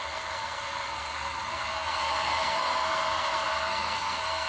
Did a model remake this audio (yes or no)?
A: yes